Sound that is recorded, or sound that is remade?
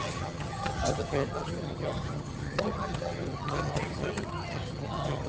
remade